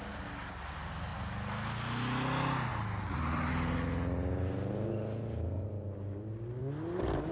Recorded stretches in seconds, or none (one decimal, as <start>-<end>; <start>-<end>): 0.0-7.3